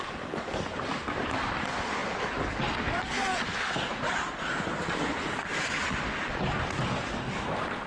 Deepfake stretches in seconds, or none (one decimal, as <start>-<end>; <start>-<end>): none